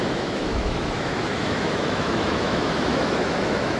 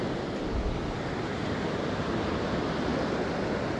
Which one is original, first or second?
second